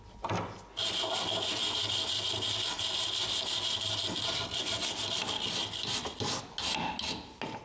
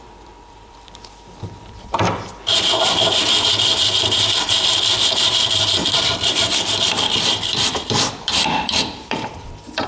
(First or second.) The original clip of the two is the first